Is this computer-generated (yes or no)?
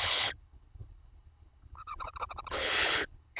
yes